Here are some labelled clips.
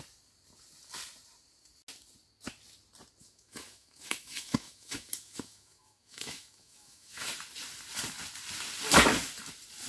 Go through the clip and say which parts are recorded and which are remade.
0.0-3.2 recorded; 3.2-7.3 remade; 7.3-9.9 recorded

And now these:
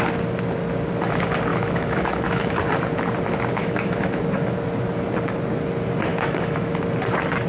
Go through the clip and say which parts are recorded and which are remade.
0.0-1.5 recorded; 1.5-2.6 remade; 2.6-3.6 recorded; 3.6-4.2 remade; 4.2-6.1 recorded; 6.1-6.8 remade; 6.8-7.5 recorded

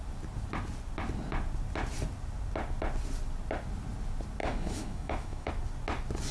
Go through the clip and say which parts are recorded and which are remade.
0.0-4.4 recorded; 4.4-5.5 remade; 5.5-6.3 recorded

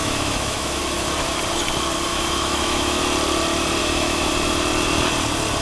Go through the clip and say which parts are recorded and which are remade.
0.0-0.8 remade; 0.8-2.1 recorded; 2.1-3.0 remade; 3.0-3.8 recorded; 3.8-4.3 remade; 4.3-5.6 recorded

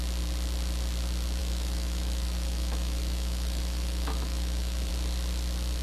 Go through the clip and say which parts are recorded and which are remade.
0.0-1.4 recorded; 1.4-4.9 remade; 4.9-5.8 recorded

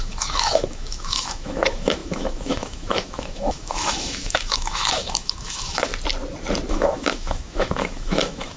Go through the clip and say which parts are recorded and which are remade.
0.0-5.9 remade; 5.9-6.7 recorded; 6.7-8.6 remade